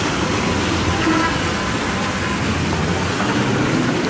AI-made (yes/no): no